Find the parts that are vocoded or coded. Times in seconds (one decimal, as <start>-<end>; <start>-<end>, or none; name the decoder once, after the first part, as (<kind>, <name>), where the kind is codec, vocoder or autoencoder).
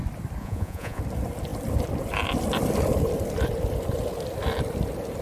0.4-1.0 (vocoder, Vocos)